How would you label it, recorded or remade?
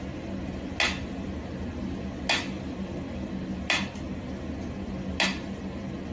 recorded